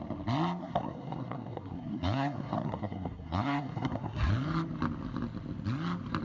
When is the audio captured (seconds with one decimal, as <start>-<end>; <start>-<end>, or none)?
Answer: 0.0-0.6; 4.3-6.2